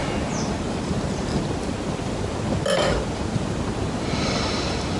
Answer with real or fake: real